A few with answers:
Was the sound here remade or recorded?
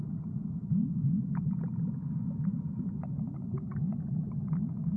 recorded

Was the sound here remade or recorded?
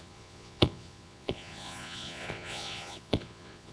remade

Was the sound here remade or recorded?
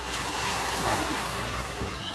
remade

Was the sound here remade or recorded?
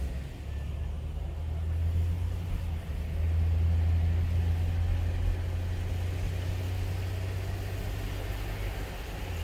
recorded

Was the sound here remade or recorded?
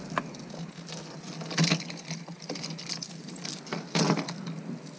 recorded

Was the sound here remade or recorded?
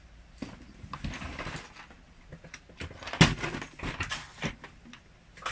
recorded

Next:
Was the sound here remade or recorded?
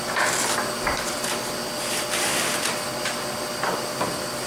recorded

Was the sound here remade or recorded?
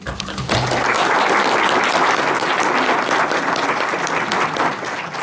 recorded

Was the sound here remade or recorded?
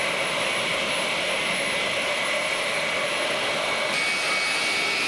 recorded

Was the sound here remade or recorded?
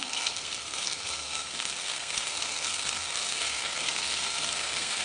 remade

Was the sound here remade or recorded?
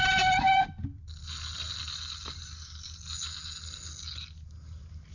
recorded